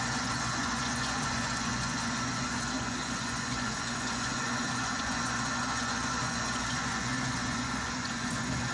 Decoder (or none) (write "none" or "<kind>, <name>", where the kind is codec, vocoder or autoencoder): vocoder, Vocos